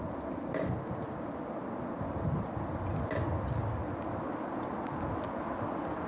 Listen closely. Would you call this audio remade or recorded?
recorded